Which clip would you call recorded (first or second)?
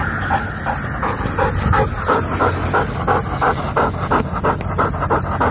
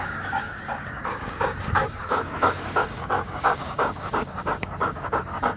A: first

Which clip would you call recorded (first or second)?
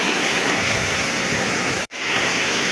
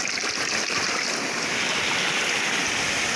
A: second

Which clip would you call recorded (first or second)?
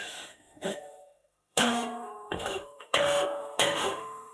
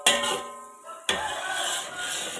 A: second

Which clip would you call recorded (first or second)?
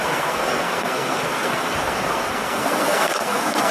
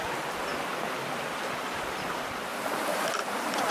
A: second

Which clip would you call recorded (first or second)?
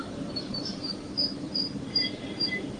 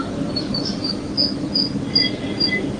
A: second